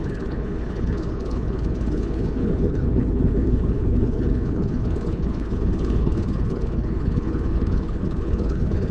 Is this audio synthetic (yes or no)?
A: yes